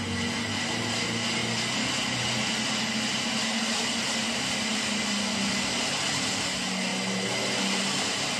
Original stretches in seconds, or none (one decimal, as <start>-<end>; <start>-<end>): 0.0-8.4